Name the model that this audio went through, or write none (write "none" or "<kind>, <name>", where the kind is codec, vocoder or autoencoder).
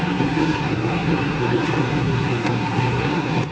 codec, SNAC